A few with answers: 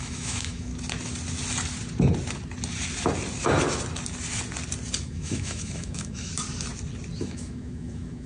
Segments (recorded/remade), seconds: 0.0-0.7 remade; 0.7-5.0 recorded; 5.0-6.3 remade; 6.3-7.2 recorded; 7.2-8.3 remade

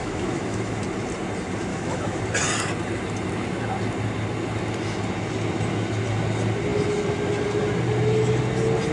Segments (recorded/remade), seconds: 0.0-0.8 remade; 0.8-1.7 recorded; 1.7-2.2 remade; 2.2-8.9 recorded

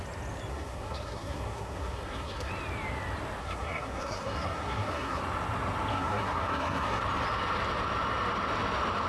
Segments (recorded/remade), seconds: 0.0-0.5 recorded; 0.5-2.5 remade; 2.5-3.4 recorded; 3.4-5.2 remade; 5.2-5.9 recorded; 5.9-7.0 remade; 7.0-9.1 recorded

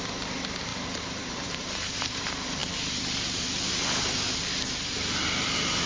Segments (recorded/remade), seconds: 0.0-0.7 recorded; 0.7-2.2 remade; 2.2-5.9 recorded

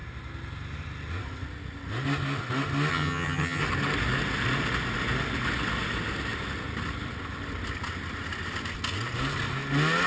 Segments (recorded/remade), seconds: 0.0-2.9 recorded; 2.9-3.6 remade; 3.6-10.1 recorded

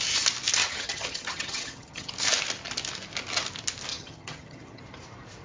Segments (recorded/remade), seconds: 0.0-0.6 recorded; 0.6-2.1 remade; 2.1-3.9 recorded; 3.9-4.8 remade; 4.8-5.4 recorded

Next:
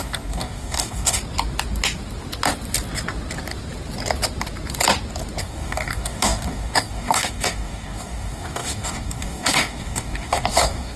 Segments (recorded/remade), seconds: 0.0-1.2 remade; 1.2-5.4 recorded; 5.4-11.0 remade

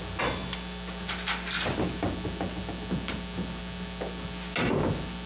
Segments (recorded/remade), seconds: 0.0-5.3 recorded